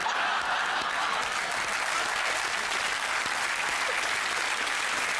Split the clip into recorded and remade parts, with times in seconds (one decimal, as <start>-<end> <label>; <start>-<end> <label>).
0.0-5.2 recorded